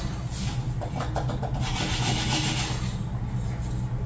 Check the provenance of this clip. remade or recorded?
recorded